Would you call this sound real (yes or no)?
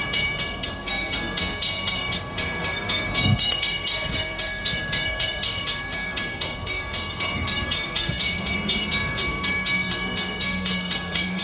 no